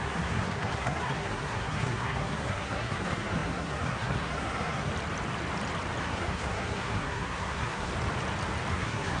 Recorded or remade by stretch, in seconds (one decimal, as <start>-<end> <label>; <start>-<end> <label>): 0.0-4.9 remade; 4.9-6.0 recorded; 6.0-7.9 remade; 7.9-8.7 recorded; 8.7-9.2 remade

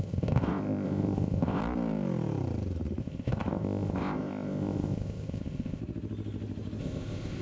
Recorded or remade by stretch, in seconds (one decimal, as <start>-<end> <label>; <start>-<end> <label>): 0.0-1.6 remade; 1.6-3.0 recorded; 3.0-5.8 remade; 5.8-6.8 recorded; 6.8-7.4 remade

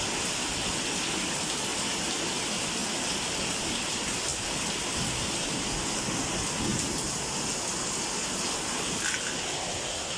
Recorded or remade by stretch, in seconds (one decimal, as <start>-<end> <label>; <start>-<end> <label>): 0.0-10.2 recorded

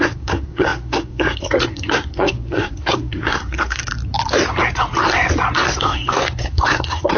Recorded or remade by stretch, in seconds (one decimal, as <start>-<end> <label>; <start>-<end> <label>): 0.0-3.9 remade; 3.9-5.8 recorded; 5.8-7.2 remade

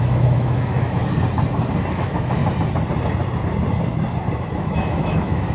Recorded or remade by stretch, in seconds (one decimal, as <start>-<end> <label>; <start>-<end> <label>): 0.0-1.0 remade; 1.0-1.9 recorded; 1.9-2.4 remade; 2.4-4.5 recorded; 4.5-5.5 remade

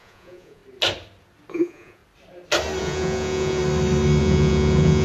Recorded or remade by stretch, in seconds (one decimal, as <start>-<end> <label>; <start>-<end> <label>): 0.0-0.6 remade; 0.6-1.5 recorded; 1.5-2.0 remade; 2.0-2.8 recorded; 2.8-3.6 remade; 3.6-4.2 recorded; 4.2-5.0 remade

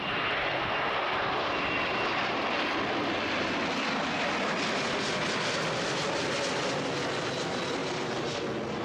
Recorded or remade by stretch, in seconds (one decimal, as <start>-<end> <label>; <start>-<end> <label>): 0.0-7.8 recorded; 7.8-8.3 remade; 8.3-8.8 recorded